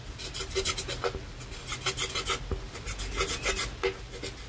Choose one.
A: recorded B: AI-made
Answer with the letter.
A